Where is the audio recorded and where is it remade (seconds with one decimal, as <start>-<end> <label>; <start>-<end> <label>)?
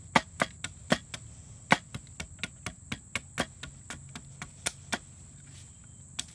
0.0-6.3 recorded